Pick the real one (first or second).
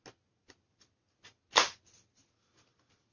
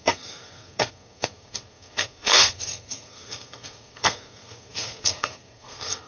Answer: first